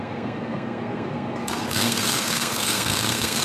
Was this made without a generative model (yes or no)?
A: no